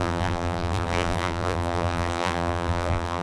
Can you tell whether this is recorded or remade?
remade